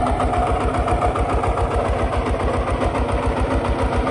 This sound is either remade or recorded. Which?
recorded